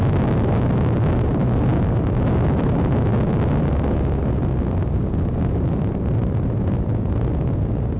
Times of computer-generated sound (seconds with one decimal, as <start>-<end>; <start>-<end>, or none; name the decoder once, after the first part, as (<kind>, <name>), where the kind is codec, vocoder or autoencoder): none